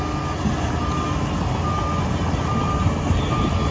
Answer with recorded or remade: recorded